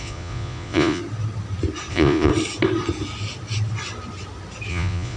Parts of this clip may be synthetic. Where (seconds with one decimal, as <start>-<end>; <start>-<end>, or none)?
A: 0.0-1.0; 1.9-2.3; 4.7-5.2